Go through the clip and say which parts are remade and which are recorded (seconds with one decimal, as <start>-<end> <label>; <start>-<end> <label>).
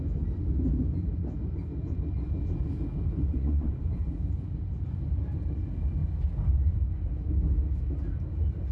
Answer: 0.0-3.3 recorded; 3.3-3.8 remade; 3.8-8.7 recorded